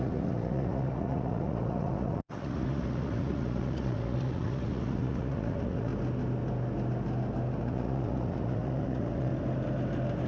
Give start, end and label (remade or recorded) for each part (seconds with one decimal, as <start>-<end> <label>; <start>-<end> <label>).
0.0-5.9 remade; 5.9-7.6 recorded; 7.6-9.3 remade; 9.3-10.3 recorded